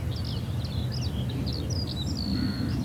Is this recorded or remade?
recorded